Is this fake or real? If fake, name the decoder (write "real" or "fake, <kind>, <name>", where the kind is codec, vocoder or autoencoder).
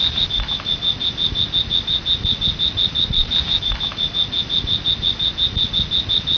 real